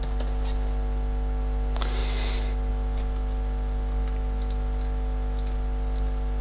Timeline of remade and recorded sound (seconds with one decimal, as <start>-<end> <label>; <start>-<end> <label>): 0.0-6.4 recorded